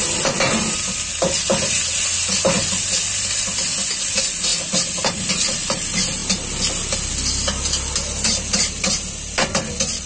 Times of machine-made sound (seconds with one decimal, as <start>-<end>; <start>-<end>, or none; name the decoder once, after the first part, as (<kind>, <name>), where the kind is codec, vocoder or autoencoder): none